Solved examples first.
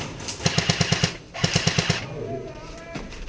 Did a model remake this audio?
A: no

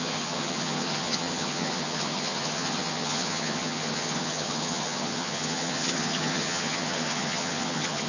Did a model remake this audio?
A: yes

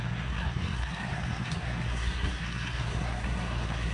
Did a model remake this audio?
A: yes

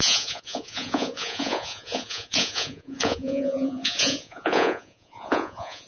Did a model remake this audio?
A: yes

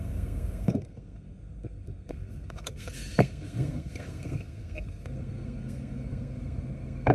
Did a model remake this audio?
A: yes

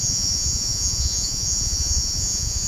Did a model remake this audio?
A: yes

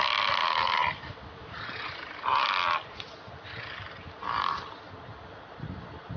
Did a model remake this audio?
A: no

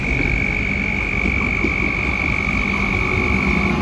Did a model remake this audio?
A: no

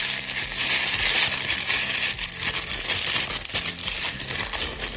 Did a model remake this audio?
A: no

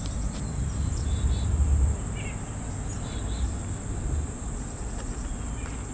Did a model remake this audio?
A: no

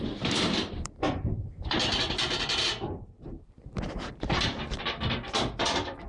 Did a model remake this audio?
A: yes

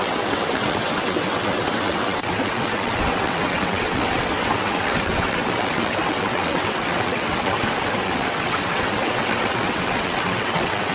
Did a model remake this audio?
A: yes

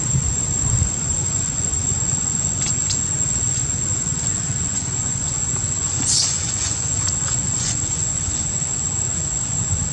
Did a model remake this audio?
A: yes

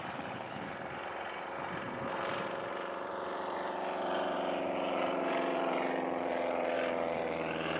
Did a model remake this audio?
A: yes